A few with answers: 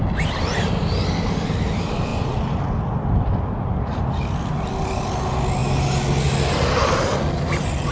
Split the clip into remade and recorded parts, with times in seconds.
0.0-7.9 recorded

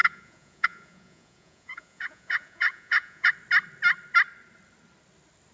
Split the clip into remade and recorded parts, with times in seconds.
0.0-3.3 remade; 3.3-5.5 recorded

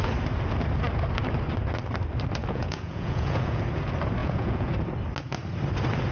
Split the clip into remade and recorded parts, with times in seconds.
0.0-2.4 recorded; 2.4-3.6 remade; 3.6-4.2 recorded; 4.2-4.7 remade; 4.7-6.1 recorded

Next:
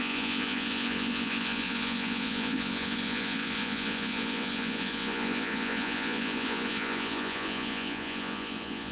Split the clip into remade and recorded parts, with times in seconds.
0.0-8.9 remade

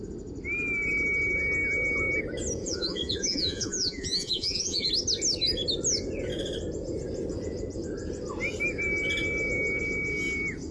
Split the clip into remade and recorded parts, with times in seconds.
0.0-2.6 recorded; 2.6-4.9 remade; 4.9-10.7 recorded

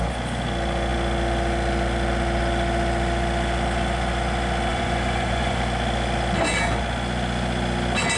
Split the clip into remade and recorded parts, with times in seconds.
0.0-4.7 recorded; 4.7-5.6 remade; 5.6-8.2 recorded

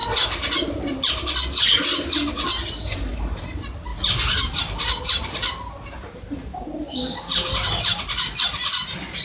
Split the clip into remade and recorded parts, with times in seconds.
0.0-9.2 recorded